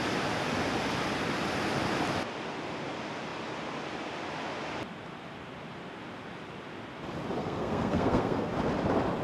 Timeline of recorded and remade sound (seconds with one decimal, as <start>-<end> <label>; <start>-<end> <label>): 0.0-7.4 recorded; 7.4-8.5 remade; 8.5-9.2 recorded